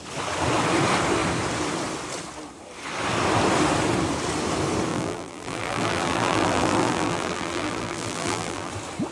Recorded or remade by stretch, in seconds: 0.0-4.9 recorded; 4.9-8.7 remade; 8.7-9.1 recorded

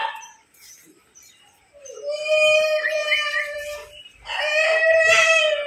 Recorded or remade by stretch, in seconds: 0.0-0.7 remade; 0.7-3.0 recorded; 3.0-4.8 remade; 4.8-5.7 recorded

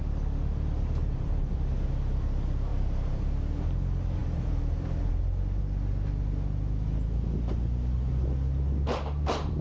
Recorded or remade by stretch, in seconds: 0.0-1.0 recorded; 1.0-1.5 remade; 1.5-2.7 recorded; 2.7-3.2 remade; 3.2-4.2 recorded; 4.2-5.1 remade; 5.1-9.6 recorded

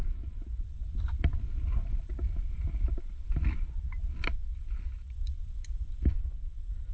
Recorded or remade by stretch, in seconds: 0.0-0.9 recorded; 0.9-2.1 remade; 2.1-5.3 recorded; 5.3-6.1 remade; 6.1-6.9 recorded

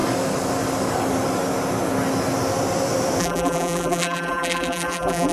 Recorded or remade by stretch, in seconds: 0.0-3.2 recorded; 3.2-5.3 remade

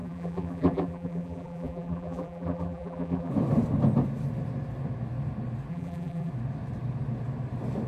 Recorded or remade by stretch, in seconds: 0.0-3.3 remade; 3.3-5.7 recorded; 5.7-6.3 remade; 6.3-7.9 recorded

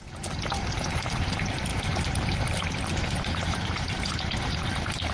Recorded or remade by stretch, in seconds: 0.0-1.7 recorded; 1.7-5.1 remade